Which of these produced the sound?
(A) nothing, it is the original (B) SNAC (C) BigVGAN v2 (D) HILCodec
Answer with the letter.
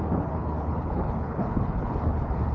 D